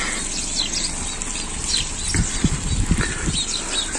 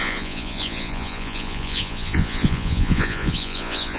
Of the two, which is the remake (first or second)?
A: second